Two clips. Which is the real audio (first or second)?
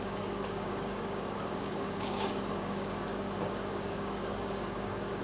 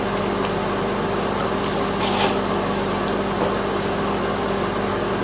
second